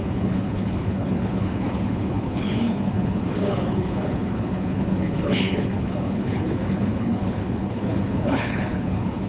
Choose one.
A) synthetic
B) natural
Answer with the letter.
A